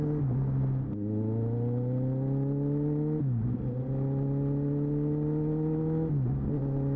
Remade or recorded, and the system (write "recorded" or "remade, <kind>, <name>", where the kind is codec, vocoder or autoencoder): recorded